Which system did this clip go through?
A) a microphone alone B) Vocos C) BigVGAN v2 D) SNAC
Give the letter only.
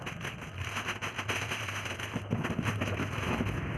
A